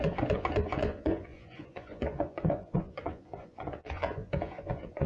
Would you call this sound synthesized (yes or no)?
yes